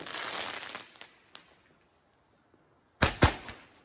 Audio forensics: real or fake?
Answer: real